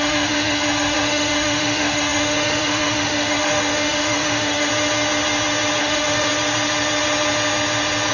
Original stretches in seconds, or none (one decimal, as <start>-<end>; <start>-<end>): 4.7-5.8; 6.3-8.1

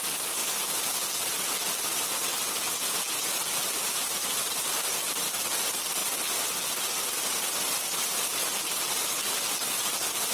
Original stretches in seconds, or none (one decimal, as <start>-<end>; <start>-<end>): 0.0-10.3

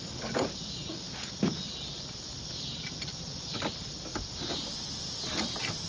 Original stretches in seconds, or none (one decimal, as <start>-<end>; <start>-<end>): 0.0-5.9